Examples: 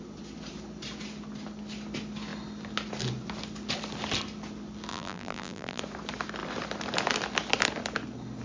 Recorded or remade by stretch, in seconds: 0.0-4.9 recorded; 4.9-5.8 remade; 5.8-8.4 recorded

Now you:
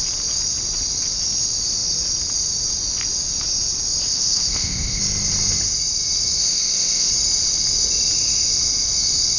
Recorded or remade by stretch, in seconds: 0.0-4.1 recorded; 4.1-5.0 remade; 5.0-6.4 recorded; 6.4-7.1 remade; 7.1-9.4 recorded

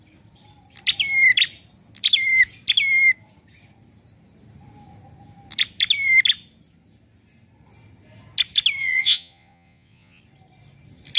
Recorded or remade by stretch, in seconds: 0.0-8.8 recorded; 8.8-10.2 remade; 10.2-11.2 recorded

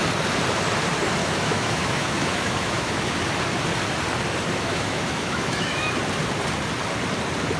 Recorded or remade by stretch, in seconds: 0.0-1.2 recorded; 1.2-3.1 remade; 3.1-4.7 recorded; 4.7-6.0 remade; 6.0-7.6 recorded

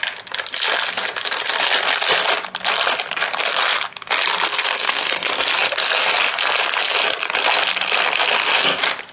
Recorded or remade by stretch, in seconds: 0.0-4.5 recorded; 4.5-5.1 remade; 5.1-9.1 recorded

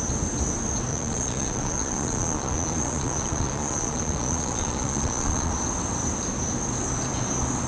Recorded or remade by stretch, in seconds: 0.0-0.9 recorded; 0.9-5.5 remade; 5.5-7.7 recorded